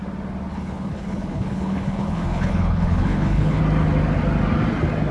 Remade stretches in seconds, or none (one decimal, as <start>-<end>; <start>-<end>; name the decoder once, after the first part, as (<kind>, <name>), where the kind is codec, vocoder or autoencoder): 0.5-3.6 (codec, HILCodec)